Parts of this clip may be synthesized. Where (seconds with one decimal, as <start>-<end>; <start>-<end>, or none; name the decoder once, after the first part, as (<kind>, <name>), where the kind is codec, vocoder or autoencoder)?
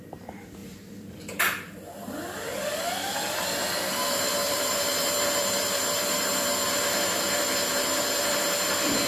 0.6-1.8 (vocoder, BigVGAN v2); 3.6-8.7